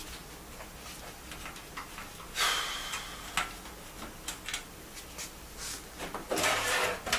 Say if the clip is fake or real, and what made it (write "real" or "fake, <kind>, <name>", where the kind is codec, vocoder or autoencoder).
real